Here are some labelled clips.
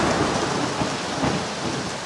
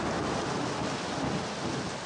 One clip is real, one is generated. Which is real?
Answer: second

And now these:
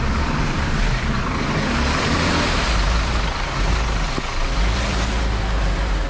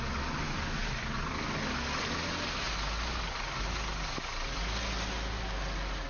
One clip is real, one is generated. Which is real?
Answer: second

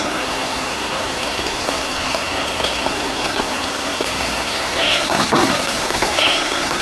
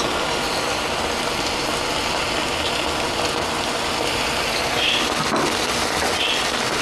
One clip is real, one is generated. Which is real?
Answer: second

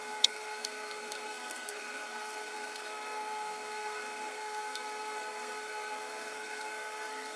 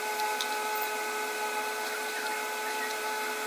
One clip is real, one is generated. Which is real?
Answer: second